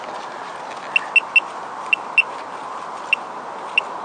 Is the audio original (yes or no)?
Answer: yes